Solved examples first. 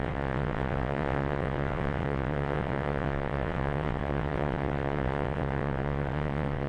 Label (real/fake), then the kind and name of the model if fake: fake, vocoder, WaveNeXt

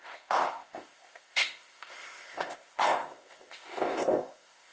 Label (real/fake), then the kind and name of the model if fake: fake, codec, ZipCodec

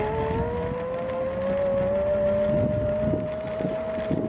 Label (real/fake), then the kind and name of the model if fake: real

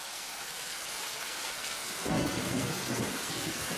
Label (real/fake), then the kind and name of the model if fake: fake, codec, SNAC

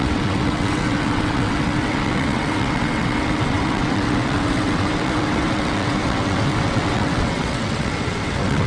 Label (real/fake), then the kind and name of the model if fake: fake, vocoder, WaveNeXt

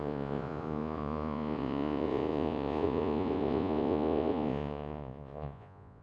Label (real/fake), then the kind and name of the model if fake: fake, vocoder, Vocos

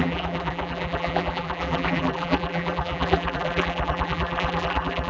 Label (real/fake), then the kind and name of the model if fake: fake, vocoder, BigVGAN v2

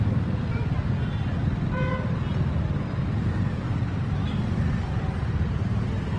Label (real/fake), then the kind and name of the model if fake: real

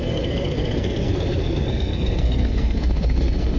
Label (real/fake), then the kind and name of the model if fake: fake, codec, SNAC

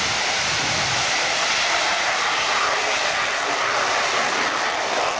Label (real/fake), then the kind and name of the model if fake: real